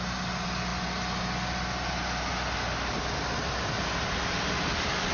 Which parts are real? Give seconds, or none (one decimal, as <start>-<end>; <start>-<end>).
0.0-5.1

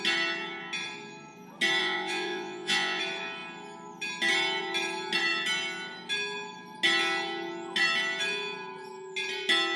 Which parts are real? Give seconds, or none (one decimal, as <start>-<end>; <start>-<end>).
0.0-1.8; 3.0-9.8